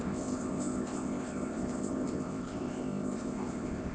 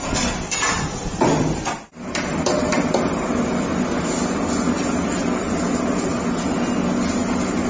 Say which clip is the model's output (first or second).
first